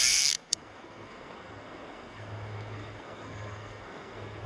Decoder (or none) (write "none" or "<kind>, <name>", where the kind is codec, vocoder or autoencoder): codec, SNAC